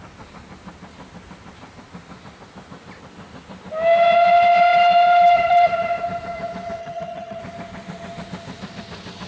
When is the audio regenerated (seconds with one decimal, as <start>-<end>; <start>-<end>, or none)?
6.8-7.4